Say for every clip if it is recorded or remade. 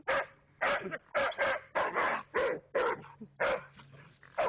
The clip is recorded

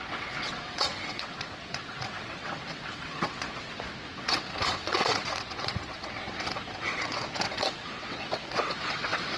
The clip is remade